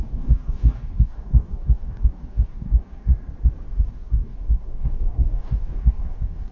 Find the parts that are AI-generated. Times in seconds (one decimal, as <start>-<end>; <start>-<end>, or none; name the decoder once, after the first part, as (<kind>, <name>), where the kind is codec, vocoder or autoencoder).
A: 0.0-3.1 (codec, DAC); 3.8-6.5